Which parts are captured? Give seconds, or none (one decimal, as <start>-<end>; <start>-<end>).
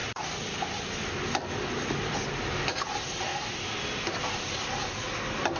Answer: 0.6-2.0; 2.9-3.3; 4.4-5.6